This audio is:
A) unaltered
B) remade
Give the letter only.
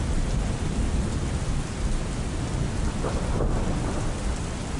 A